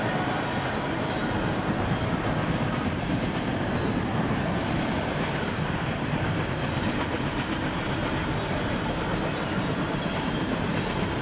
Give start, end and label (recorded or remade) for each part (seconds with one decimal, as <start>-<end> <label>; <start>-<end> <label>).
0.0-8.0 remade; 8.0-10.1 recorded; 10.1-11.2 remade

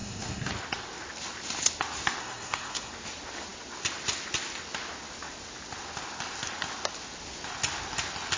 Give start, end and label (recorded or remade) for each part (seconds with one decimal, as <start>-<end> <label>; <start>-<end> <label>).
0.0-0.5 remade; 0.5-2.2 recorded; 2.2-2.9 remade; 2.9-8.4 recorded

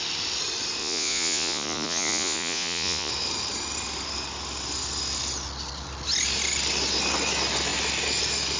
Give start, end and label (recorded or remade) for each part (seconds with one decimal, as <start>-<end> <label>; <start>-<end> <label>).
0.0-0.8 recorded; 0.8-3.1 remade; 3.1-8.6 recorded

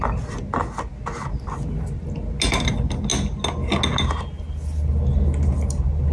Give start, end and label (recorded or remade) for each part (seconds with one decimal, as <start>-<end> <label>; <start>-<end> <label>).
0.0-6.1 recorded

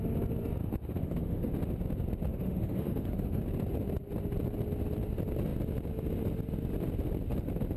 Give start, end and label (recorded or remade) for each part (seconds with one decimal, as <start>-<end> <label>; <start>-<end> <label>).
0.0-0.6 recorded; 0.6-1.5 remade; 1.5-2.3 recorded; 2.3-3.4 remade; 3.4-7.8 recorded

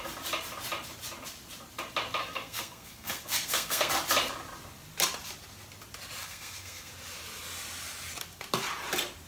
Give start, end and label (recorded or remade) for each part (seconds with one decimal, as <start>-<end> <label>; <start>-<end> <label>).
0.0-2.2 recorded; 2.2-3.9 remade; 3.9-6.2 recorded; 6.2-6.9 remade; 6.9-9.3 recorded